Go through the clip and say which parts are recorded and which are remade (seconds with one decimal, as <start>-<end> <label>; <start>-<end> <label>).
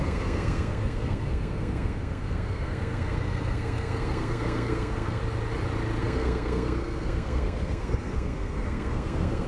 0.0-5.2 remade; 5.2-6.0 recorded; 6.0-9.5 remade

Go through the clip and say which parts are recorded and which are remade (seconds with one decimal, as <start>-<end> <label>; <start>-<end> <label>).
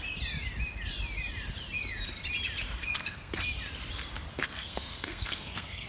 0.0-2.8 recorded; 2.8-3.3 remade; 3.3-4.3 recorded; 4.3-5.9 remade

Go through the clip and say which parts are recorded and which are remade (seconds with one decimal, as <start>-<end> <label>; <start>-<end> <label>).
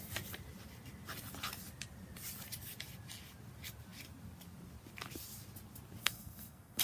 0.0-6.0 recorded; 6.0-6.8 remade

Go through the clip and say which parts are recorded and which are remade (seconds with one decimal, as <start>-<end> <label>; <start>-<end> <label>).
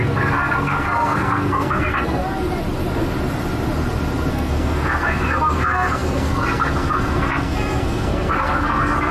0.0-2.2 remade; 2.2-4.3 recorded; 4.3-9.1 remade